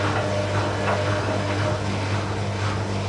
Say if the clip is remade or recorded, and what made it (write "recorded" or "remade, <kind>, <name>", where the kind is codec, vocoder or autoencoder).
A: recorded